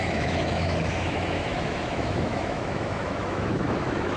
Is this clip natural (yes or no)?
no